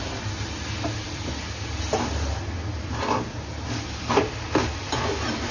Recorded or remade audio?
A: recorded